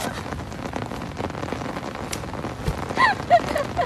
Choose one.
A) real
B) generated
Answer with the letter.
A